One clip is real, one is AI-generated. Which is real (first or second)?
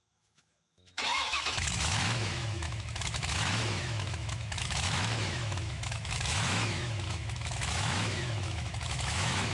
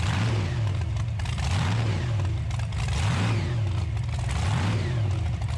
second